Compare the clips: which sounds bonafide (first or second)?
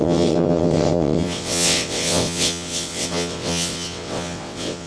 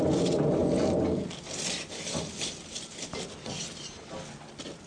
second